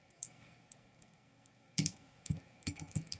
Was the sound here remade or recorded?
remade